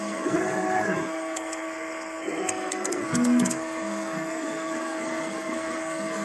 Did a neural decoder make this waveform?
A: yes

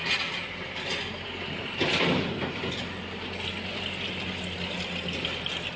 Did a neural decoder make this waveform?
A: no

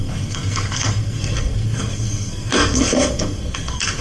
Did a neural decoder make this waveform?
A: yes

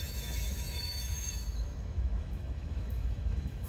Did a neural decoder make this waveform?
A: yes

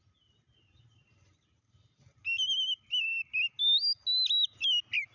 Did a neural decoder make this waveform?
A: no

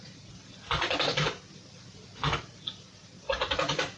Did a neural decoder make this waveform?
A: no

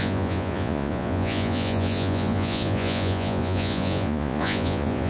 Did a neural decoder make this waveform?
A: yes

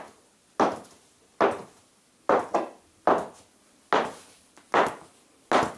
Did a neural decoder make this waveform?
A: no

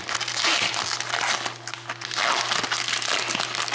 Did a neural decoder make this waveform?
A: no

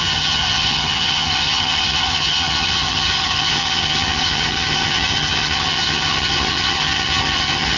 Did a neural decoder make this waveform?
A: yes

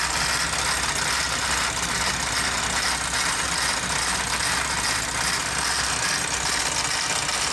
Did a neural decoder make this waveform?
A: no